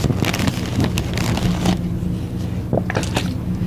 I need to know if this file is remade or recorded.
recorded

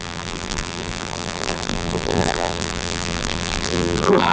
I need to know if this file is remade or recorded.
remade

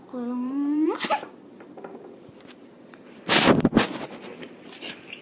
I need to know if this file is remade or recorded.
remade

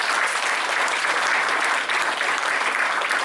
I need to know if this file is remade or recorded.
remade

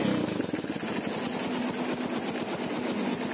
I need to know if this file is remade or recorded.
recorded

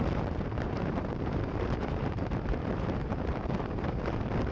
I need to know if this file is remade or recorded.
remade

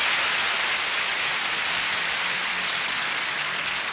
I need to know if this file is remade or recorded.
recorded